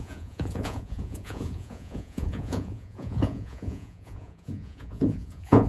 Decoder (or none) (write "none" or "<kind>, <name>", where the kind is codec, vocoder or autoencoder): vocoder, Vocos